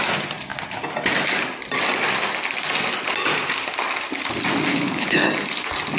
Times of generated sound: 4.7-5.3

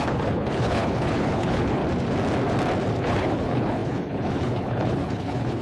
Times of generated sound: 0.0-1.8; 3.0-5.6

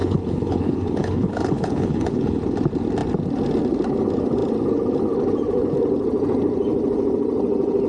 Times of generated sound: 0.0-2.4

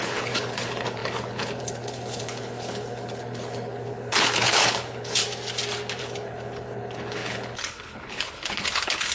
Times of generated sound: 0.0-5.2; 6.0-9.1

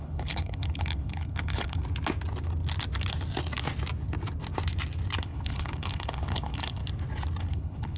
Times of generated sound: 0.0-1.8; 5.2-6.8; 7.4-8.0